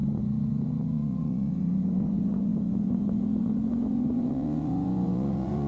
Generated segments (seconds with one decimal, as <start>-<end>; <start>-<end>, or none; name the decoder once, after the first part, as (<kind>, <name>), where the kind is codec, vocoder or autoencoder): 0.0-5.7 (vocoder, Vocos)